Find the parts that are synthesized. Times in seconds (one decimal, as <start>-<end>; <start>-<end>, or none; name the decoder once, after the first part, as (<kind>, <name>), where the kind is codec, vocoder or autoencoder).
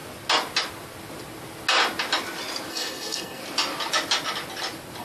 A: 2.7-3.4 (codec, SNAC)